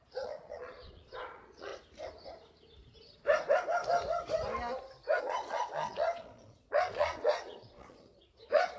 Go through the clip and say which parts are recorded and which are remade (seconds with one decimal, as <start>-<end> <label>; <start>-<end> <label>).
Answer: 0.0-1.7 remade; 1.7-5.2 recorded; 5.2-8.8 remade